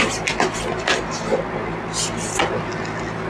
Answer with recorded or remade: recorded